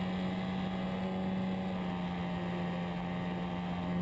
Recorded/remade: recorded